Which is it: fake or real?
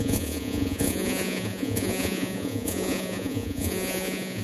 fake